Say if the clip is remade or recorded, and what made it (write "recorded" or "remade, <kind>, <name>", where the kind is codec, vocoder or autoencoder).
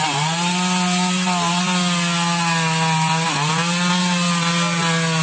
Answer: recorded